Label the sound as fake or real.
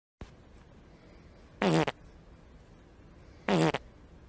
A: real